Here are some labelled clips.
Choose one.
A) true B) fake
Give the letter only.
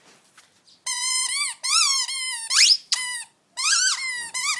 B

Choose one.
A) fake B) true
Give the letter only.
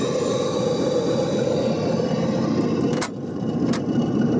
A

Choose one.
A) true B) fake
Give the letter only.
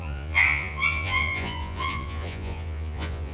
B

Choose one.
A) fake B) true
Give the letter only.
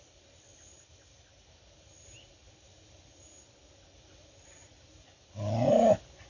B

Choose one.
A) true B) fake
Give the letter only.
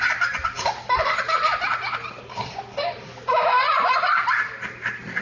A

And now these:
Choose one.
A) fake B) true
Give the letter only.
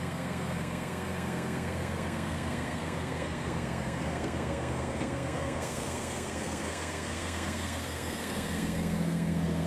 A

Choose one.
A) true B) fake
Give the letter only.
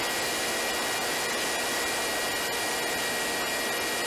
A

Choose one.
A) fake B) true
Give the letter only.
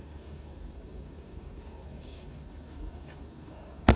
A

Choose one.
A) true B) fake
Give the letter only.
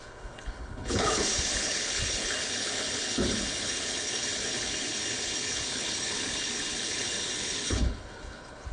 B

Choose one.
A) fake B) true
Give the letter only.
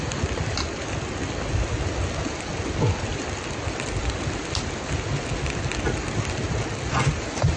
B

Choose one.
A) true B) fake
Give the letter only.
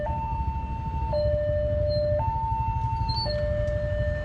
A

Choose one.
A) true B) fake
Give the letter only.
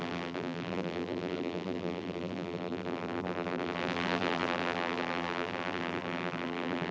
B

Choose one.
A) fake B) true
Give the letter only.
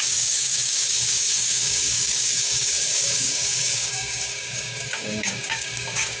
A